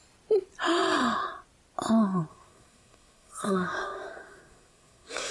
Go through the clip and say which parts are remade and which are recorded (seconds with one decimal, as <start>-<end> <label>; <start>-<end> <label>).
0.0-2.3 recorded; 2.3-5.3 remade